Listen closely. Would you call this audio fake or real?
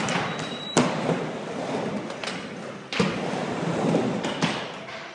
real